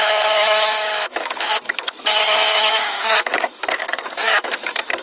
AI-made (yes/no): yes